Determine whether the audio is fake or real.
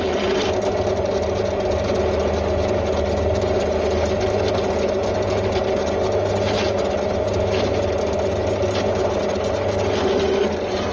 real